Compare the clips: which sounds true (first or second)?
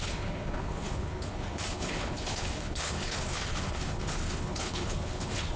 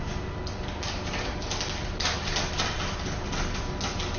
second